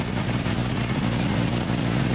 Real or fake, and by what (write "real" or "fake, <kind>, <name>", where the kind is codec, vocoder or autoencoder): fake, vocoder, Vocos